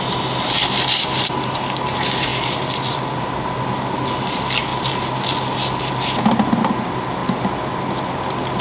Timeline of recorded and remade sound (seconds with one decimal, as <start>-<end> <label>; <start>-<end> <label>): 0.0-2.3 recorded; 2.3-2.8 remade; 2.8-7.2 recorded; 7.2-7.9 remade; 7.9-8.6 recorded